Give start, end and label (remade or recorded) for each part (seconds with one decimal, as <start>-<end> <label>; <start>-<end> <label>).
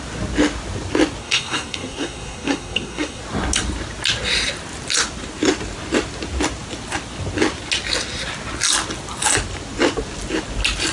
0.0-1.2 recorded; 1.2-3.2 remade; 3.2-10.9 recorded